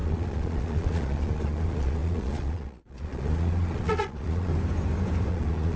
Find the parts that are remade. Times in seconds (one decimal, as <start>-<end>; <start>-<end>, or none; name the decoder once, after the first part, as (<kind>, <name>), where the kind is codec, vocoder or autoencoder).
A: 0.0-4.5 (vocoder, Vocos); 5.3-5.8